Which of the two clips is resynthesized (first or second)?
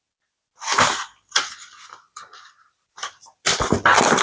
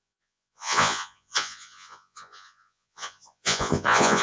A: second